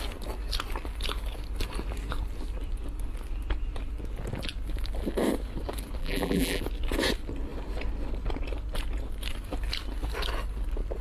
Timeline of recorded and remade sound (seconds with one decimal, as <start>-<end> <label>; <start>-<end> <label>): 0.0-6.0 recorded; 6.0-6.6 remade; 6.6-11.0 recorded